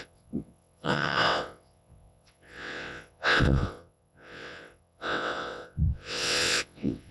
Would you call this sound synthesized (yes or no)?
yes